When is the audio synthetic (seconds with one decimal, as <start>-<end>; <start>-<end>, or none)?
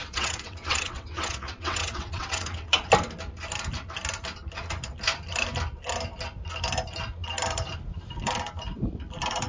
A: 0.0-2.9